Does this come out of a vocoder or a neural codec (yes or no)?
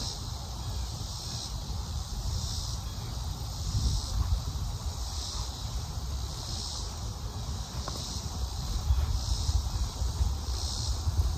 no